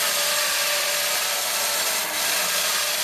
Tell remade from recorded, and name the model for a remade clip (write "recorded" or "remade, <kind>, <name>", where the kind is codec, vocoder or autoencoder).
recorded